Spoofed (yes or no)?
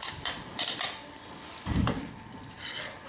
yes